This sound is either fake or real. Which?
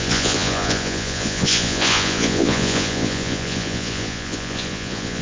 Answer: fake